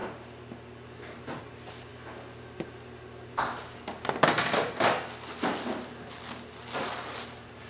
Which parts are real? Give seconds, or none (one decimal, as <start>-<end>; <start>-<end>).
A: 0.0-7.7